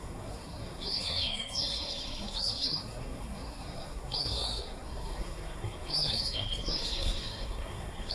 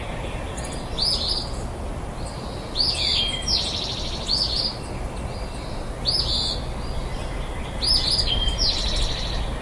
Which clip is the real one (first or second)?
second